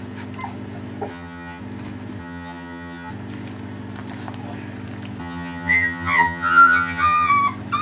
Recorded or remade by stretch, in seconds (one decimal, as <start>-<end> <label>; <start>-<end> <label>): 0.0-1.1 recorded; 1.1-1.6 remade; 1.6-2.2 recorded; 2.2-3.1 remade; 3.1-5.2 recorded; 5.2-7.3 remade; 7.3-7.8 recorded